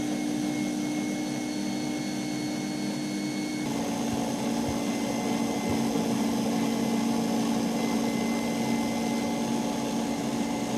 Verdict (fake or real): real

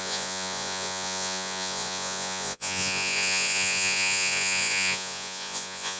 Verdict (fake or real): fake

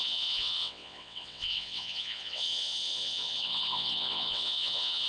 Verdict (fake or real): fake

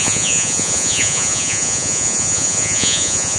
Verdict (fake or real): fake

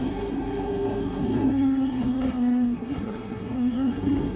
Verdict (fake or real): fake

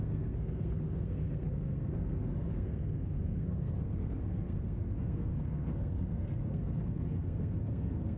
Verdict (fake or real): fake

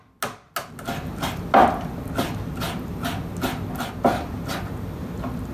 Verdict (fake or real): real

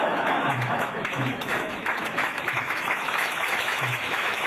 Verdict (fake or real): fake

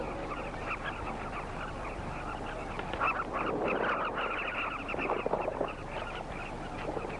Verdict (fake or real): real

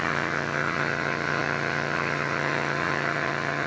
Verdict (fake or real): fake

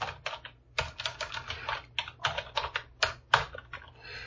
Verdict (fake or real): real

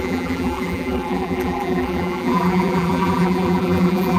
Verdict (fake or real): fake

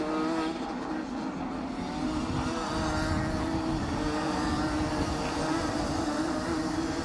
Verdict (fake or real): real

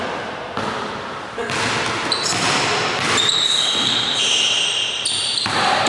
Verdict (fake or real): real